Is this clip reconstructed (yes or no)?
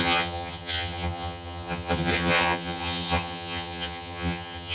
yes